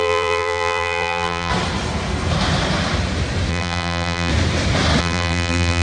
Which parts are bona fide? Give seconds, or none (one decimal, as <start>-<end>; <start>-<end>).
1.5-3.5; 4.3-5.0